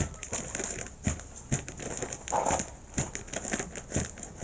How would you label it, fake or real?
real